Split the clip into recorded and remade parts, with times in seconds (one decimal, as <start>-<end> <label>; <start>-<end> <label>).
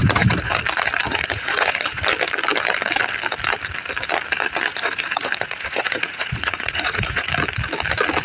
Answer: 0.0-0.6 remade; 0.6-1.1 recorded; 1.1-2.0 remade; 2.0-4.7 recorded; 4.7-7.3 remade; 7.3-8.2 recorded